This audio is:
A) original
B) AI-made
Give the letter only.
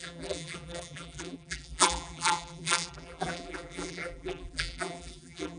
B